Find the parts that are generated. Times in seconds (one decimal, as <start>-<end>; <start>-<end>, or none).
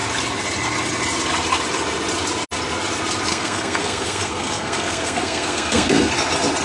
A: 3.3-6.1